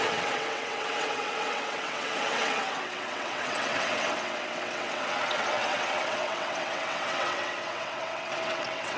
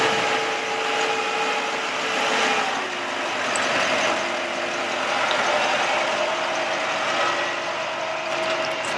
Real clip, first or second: second